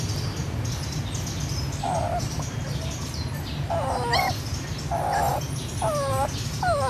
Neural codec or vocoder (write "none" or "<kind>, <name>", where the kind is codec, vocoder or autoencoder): none